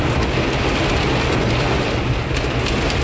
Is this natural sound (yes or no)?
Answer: yes